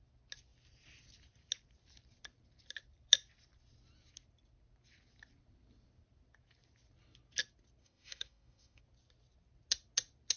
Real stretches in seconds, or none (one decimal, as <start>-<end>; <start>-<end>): 0.0-7.8; 8.8-10.4